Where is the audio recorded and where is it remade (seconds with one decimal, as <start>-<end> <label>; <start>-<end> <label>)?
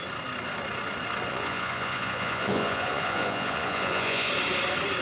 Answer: 0.0-1.3 recorded; 1.3-4.3 remade; 4.3-5.0 recorded